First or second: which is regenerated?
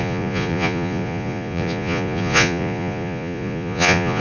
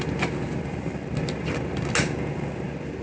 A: first